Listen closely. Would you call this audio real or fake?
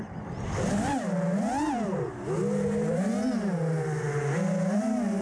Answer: real